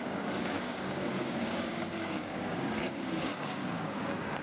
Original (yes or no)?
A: no